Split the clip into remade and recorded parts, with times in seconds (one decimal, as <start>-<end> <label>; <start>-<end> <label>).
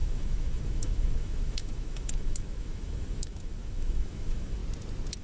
0.0-4.6 remade; 4.6-5.2 recorded